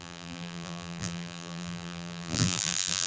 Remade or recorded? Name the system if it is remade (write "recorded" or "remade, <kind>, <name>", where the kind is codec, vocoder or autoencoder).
remade, vocoder, BigVGAN v2